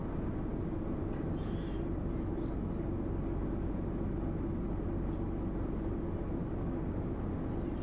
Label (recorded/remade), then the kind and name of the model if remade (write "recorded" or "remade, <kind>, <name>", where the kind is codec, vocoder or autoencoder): recorded